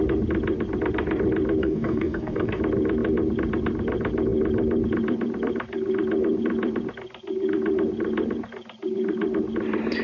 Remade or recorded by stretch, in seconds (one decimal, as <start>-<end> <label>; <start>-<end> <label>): 0.0-1.6 recorded; 1.6-2.6 remade; 2.6-10.0 recorded